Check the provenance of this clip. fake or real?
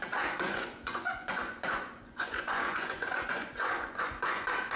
fake